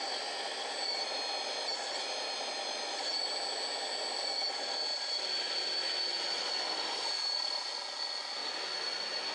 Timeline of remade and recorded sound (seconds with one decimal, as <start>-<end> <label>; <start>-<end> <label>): 0.0-6.1 recorded; 6.1-7.7 remade; 7.7-9.3 recorded

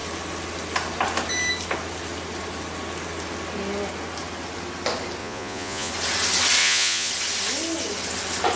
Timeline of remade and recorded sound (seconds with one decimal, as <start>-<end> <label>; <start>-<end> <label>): 0.0-5.2 recorded; 5.2-5.9 remade; 5.9-6.6 recorded; 6.6-7.1 remade; 7.1-8.6 recorded

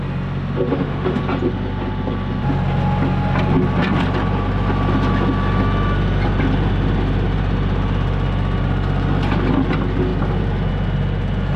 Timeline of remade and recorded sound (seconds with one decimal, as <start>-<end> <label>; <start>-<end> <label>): 0.0-0.7 recorded; 0.7-1.2 remade; 1.2-11.6 recorded

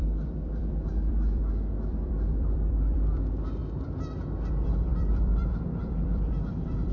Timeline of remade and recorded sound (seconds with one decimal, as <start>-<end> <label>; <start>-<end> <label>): 0.0-3.6 remade; 3.6-4.5 recorded; 4.5-6.9 remade